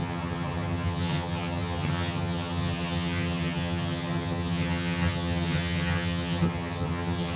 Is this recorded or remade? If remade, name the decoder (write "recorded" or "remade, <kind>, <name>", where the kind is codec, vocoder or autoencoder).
remade, vocoder, HiFi-GAN